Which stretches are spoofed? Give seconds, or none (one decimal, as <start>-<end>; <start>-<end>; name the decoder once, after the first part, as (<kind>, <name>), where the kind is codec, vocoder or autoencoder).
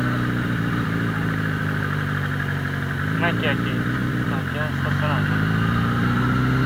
none